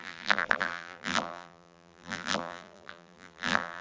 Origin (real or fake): fake